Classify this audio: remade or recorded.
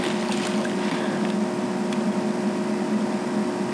recorded